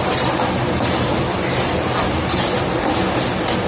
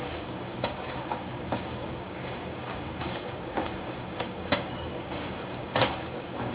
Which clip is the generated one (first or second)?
second